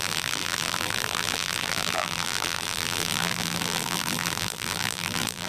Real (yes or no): no